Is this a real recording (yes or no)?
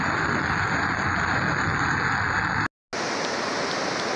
yes